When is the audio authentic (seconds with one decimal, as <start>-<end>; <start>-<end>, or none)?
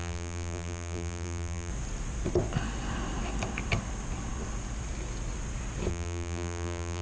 1.7-5.9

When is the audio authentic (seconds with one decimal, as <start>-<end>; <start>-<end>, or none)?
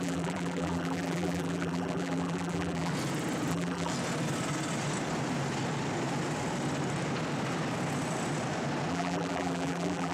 2.9-3.5; 3.9-8.9